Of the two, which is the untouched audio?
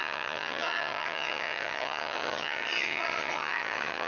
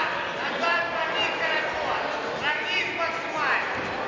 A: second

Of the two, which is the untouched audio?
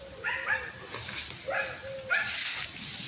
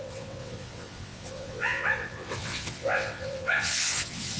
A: first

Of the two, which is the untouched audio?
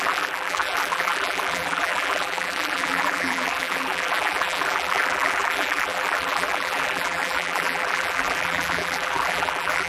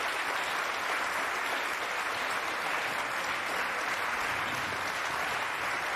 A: second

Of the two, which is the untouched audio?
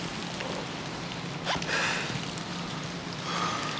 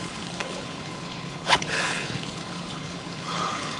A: first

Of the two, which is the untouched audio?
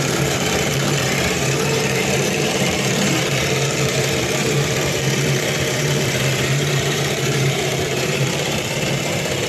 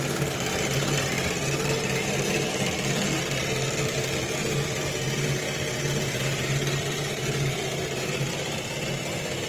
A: second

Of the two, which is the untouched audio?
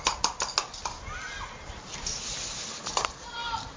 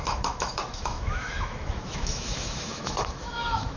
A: first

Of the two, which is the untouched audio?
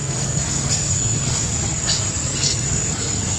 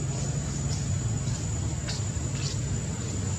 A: second